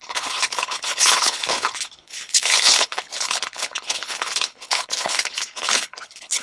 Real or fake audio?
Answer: fake